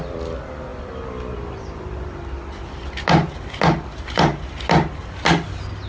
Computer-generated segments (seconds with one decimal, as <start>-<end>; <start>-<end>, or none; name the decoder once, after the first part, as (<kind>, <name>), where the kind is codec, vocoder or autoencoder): none